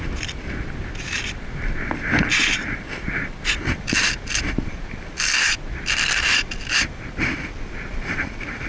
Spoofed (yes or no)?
yes